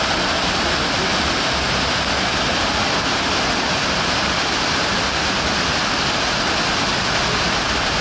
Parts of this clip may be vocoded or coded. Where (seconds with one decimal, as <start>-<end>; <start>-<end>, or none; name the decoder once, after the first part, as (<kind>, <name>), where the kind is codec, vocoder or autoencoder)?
none